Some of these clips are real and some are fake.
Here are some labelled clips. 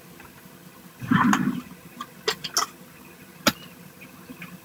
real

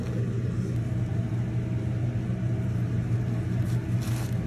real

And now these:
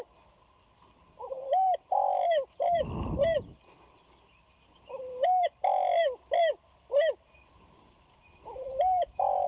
fake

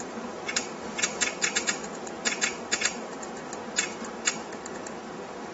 fake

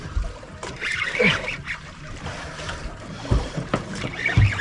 fake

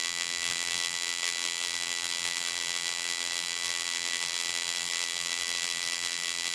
fake